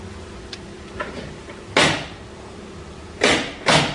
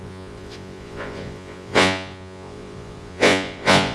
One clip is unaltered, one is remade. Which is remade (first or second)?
second